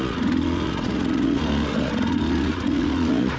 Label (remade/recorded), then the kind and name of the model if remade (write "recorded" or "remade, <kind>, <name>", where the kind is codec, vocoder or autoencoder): remade, vocoder, Vocos